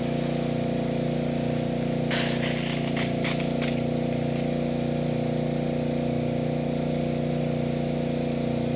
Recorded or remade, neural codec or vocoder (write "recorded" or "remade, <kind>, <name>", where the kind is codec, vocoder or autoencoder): recorded